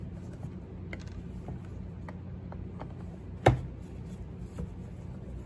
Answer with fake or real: real